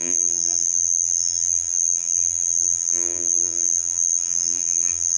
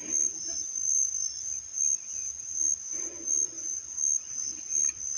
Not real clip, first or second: first